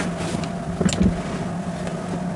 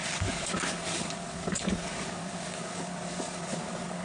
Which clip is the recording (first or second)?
first